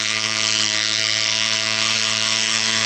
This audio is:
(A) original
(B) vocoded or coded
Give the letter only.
B